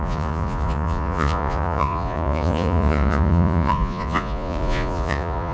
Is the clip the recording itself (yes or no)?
no